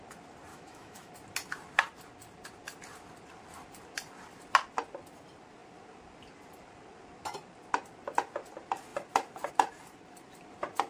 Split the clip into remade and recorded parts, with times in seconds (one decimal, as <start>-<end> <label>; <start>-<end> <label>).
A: 0.0-0.5 recorded; 0.5-1.1 remade; 1.1-10.9 recorded